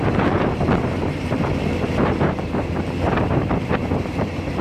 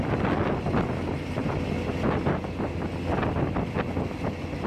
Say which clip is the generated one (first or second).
first